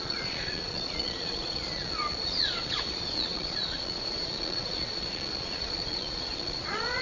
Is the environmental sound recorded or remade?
remade